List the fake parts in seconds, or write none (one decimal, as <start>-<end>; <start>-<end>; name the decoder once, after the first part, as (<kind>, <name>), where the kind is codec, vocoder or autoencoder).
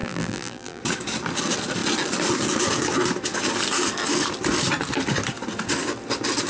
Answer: 0.0-0.8 (vocoder, BigVGAN v2)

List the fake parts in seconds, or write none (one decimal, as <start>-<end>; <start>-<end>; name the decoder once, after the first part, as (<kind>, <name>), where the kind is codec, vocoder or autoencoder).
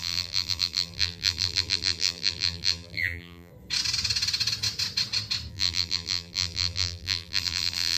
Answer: 0.0-3.5 (vocoder, BigVGAN v2); 5.5-8.0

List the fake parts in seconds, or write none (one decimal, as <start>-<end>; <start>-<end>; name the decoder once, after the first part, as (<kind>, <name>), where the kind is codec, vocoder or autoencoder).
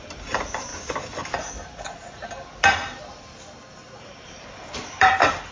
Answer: 0.0-0.7 (vocoder, BigVGAN v2); 4.0-5.5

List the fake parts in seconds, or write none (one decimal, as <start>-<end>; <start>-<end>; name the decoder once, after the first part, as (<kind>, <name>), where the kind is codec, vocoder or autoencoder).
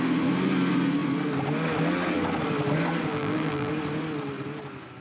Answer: 3.1-3.7 (vocoder, BigVGAN v2)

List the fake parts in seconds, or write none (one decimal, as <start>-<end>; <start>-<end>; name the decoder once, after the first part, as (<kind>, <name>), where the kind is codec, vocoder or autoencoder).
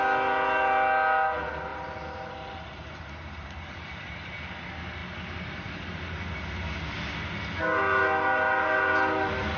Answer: 1.7-3.9 (vocoder, BigVGAN v2)